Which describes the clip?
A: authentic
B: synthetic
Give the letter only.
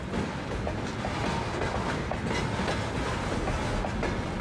A